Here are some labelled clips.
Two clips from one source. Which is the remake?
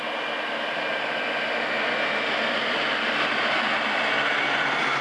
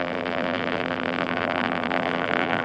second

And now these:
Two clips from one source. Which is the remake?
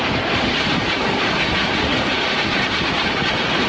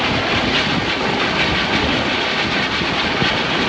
first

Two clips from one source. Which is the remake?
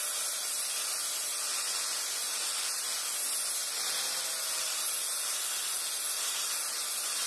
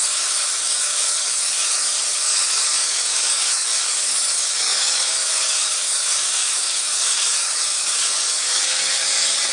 second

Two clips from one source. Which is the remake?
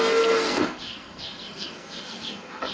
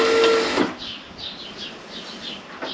first